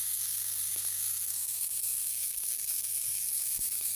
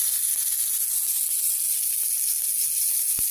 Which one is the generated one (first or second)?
first